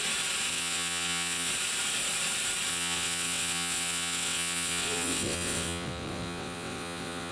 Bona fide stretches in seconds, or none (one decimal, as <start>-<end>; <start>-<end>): 0.0-0.5; 1.5-2.7